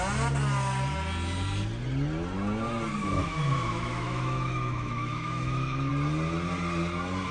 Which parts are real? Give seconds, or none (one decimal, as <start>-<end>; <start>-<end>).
0.0-3.0; 5.9-7.3